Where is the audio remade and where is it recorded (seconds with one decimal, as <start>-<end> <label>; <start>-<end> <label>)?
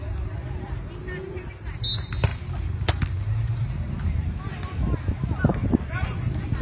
0.0-6.6 recorded